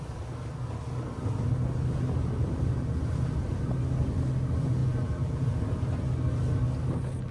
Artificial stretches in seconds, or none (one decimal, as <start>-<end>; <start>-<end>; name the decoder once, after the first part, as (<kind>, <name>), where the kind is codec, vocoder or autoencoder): 4.8-5.6 (vocoder, BigVGAN v2)